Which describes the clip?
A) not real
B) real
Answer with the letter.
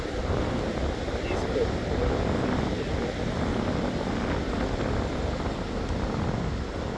B